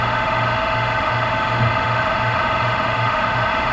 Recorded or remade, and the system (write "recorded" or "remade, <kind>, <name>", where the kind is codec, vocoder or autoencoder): remade, autoencoder, DAC-VAE